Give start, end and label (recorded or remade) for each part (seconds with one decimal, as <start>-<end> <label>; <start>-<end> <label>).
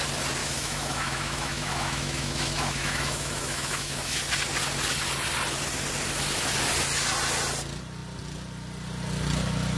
0.0-0.4 recorded; 0.4-4.2 remade; 4.2-9.8 recorded